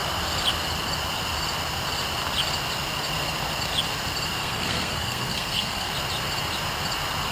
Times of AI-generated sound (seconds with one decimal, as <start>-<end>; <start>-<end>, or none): 4.4-5.9